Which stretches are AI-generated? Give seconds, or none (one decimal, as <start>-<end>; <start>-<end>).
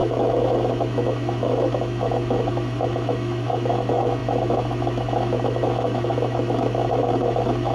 0.0-7.7